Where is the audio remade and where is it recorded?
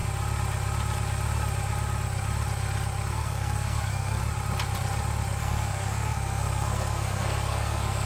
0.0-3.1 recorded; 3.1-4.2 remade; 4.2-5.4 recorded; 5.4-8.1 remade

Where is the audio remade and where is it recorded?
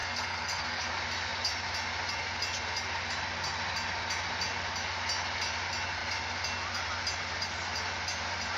0.0-0.9 remade; 0.9-8.6 recorded